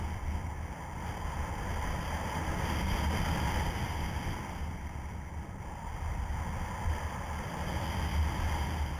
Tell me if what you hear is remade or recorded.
recorded